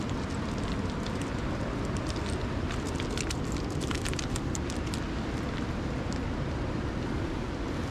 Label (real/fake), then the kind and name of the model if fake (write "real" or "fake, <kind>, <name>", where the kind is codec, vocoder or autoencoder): real